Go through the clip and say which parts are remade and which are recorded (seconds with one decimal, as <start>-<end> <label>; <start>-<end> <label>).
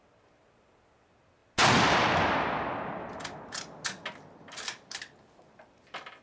0.0-6.2 recorded